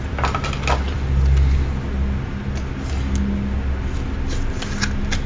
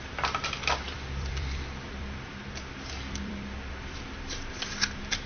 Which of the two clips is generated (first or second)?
second